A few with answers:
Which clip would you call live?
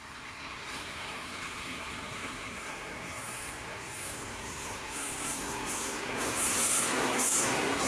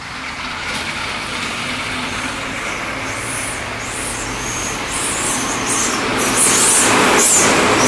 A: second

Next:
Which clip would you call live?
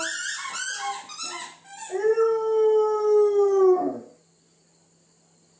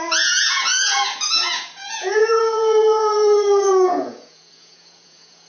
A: first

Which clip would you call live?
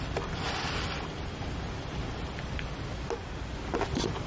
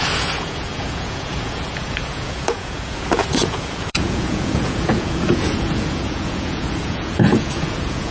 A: first